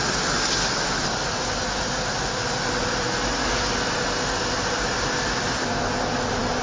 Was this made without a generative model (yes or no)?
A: yes